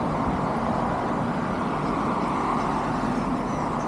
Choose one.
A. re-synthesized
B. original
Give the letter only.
B